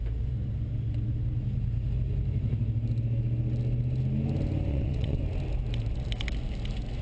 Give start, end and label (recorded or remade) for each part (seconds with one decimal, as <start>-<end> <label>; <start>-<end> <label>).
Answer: 0.0-4.7 recorded; 4.7-5.2 remade; 5.2-7.0 recorded